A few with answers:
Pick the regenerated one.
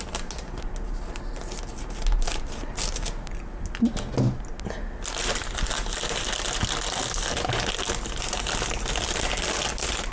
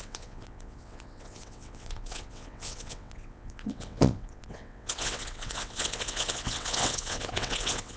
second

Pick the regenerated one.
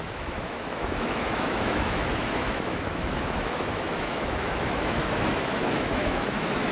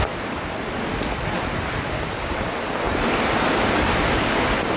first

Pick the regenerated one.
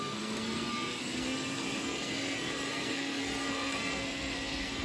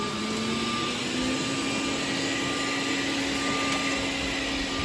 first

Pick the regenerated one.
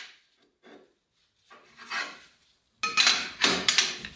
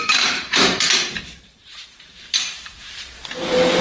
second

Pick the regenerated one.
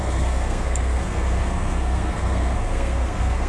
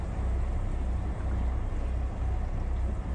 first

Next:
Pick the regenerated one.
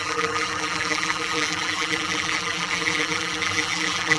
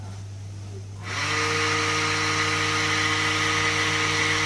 first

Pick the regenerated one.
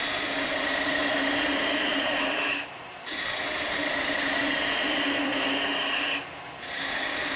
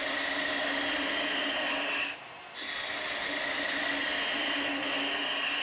first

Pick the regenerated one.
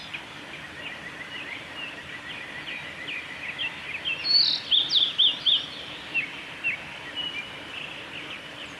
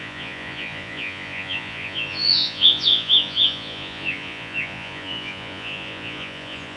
second